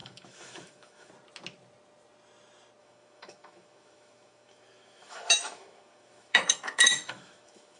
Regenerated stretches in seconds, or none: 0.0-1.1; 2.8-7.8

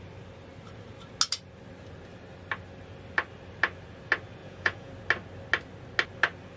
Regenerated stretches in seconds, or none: 4.4-4.9